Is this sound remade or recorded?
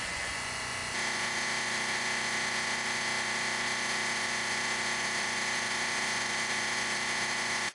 remade